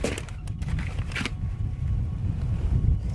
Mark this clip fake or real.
real